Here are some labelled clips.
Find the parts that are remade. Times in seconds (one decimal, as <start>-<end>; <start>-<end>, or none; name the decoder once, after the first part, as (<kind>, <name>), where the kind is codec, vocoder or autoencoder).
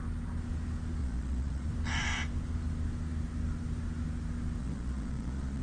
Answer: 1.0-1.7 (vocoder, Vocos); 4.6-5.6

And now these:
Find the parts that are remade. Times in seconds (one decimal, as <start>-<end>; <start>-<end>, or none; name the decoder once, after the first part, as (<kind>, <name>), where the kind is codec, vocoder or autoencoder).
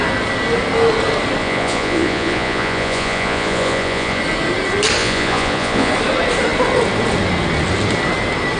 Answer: 1.4-4.2 (vocoder, Vocos); 5.0-5.9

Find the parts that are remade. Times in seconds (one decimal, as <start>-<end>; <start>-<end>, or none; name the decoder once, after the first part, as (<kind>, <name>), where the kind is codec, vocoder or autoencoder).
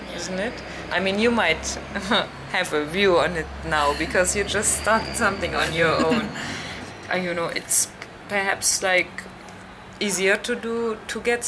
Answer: 4.5-9.1 (vocoder, Vocos)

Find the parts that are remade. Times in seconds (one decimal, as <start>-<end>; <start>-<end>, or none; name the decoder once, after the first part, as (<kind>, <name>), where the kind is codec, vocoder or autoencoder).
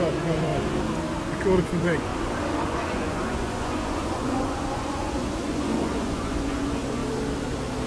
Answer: 0.0-0.5 (vocoder, Vocos); 1.6-2.1; 2.6-7.0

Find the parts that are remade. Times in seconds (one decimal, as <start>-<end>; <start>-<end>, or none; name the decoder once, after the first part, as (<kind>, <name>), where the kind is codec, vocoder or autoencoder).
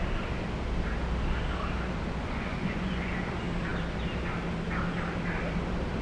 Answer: 2.2-3.1 (vocoder, Vocos)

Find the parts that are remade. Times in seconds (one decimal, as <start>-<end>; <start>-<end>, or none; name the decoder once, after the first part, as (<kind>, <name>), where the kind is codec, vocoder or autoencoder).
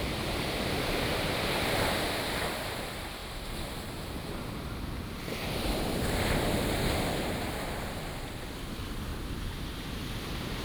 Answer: none